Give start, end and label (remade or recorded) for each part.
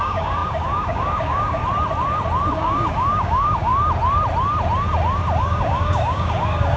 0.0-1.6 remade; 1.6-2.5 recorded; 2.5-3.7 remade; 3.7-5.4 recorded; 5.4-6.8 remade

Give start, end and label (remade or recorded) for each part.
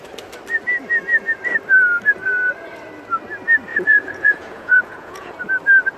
0.0-3.7 recorded; 3.7-5.3 remade; 5.3-6.0 recorded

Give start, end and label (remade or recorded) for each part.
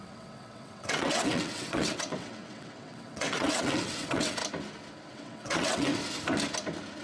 0.0-4.4 remade; 4.4-5.1 recorded; 5.1-5.9 remade; 5.9-7.0 recorded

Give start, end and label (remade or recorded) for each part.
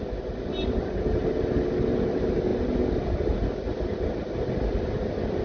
0.0-5.4 recorded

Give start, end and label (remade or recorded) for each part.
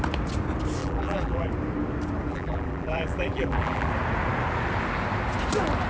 0.0-0.8 recorded; 0.8-1.5 remade; 1.5-2.3 recorded; 2.3-3.9 remade; 3.9-5.9 recorded